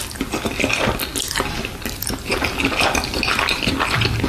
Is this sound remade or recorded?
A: recorded